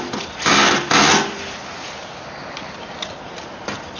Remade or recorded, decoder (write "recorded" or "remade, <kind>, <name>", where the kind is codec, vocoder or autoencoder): recorded